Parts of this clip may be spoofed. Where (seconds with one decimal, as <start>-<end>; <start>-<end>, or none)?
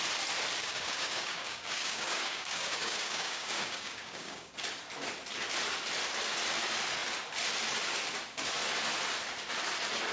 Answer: 0.6-4.5